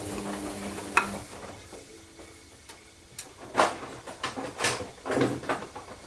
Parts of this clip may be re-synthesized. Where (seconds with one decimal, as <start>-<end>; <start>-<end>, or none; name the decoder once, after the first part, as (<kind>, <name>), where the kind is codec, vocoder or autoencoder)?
none

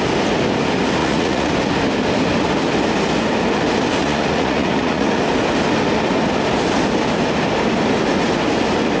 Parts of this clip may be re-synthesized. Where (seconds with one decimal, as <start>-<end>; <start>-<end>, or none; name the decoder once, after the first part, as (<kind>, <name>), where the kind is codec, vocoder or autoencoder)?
1.0-1.5 (vocoder, Vocos); 4.0-5.2

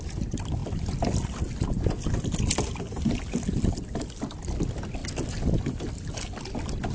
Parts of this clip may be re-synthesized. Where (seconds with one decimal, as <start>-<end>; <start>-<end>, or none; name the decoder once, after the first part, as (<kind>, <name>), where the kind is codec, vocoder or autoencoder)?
none

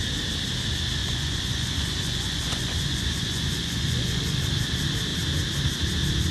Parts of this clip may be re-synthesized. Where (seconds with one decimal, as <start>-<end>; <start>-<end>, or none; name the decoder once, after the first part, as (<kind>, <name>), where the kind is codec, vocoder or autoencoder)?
1.0-4.4 (vocoder, Vocos)

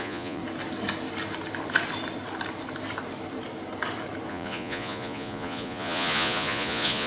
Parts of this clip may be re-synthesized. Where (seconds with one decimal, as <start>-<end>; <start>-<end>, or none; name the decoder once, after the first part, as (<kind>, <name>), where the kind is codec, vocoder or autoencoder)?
0.0-0.4 (vocoder, Vocos); 4.3-7.1

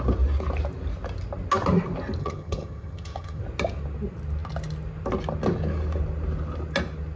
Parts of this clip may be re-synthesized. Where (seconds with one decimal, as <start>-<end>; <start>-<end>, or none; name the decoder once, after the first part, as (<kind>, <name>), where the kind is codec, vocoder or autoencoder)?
2.2-3.4 (vocoder, HiFi-GAN)

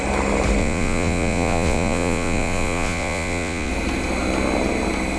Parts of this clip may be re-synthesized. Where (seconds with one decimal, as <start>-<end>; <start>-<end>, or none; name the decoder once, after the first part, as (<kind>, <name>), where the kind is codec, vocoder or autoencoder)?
0.6-3.7 (vocoder, Vocos)